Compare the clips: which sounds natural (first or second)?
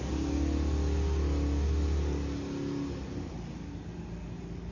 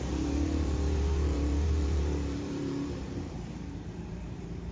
first